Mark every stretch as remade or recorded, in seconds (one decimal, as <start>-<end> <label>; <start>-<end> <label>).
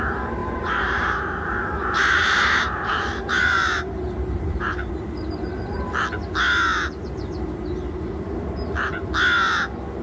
0.0-0.4 recorded; 0.4-4.9 remade; 4.9-10.0 recorded